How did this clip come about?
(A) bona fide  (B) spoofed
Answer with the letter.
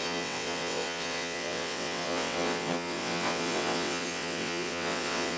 B